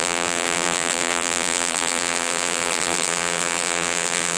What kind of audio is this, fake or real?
fake